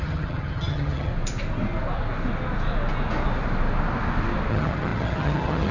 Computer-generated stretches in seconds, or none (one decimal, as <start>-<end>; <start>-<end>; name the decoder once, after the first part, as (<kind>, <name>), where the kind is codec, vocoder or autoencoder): 0.0-1.1 (vocoder, HiFi-GAN); 4.5-5.7